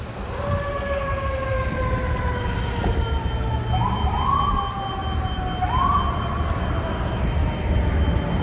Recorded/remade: recorded